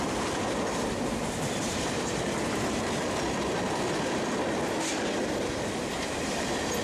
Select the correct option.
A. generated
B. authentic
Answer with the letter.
B